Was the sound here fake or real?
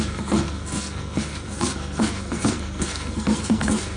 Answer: fake